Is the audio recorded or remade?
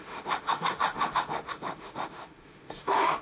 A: remade